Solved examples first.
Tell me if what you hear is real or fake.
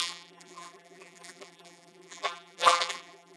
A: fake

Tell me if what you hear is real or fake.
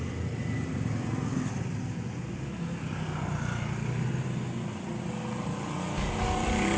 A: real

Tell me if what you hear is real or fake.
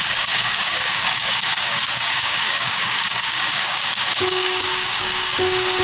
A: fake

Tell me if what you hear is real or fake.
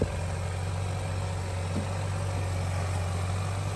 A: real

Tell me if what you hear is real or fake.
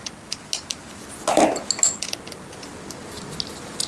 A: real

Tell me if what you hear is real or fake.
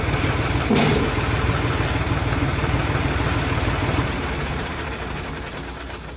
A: fake